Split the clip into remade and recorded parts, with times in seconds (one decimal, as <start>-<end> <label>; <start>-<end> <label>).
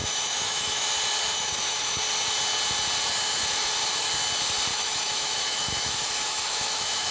0.0-0.8 remade; 0.8-1.3 recorded; 1.3-2.0 remade; 2.0-4.7 recorded; 4.7-7.1 remade